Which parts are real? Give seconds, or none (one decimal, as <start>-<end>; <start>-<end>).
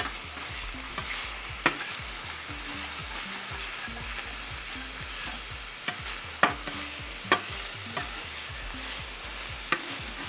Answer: 0.0-10.3